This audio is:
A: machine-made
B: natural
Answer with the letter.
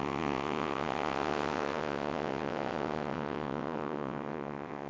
A